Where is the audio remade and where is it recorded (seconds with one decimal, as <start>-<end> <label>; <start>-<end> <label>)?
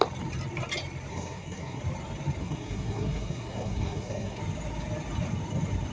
0.0-1.1 recorded; 1.1-1.8 remade; 1.8-2.4 recorded; 2.4-4.4 remade; 4.4-5.9 recorded